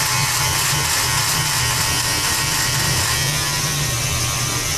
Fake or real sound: fake